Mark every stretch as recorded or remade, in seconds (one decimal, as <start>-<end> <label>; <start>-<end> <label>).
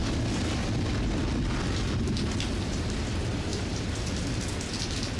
0.0-5.2 recorded